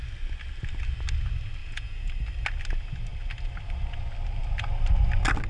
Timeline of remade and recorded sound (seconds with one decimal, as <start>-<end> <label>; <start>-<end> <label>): 0.0-1.6 recorded; 1.6-2.1 remade; 2.1-5.5 recorded